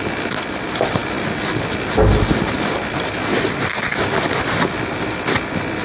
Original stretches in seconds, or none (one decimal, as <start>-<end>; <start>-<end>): 0.0-5.8